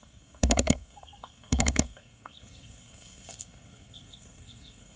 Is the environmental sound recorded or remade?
remade